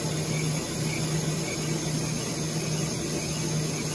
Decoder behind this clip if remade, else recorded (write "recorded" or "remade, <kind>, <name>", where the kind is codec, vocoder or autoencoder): recorded